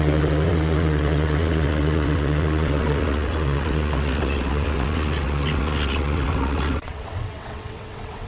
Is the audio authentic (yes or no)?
no